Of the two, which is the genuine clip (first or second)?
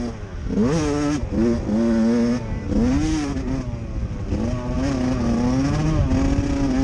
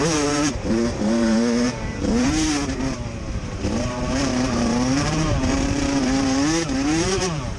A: first